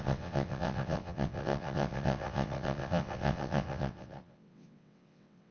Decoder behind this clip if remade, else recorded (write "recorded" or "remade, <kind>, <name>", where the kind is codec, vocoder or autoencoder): remade, vocoder, WaveNeXt